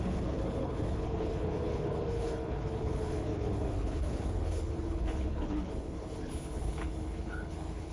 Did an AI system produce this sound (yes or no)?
yes